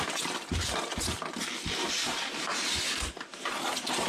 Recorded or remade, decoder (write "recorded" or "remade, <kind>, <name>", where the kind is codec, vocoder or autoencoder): recorded